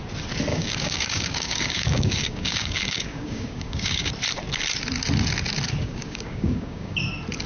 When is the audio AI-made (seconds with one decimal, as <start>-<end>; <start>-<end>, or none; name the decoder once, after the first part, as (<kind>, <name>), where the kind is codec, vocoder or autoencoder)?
0.5-4.1 (codec, DAC); 5.8-7.0